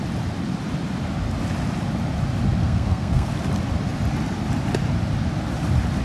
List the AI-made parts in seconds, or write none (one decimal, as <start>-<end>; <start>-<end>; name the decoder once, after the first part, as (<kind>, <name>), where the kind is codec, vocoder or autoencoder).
2.6-3.3 (codec, SNAC)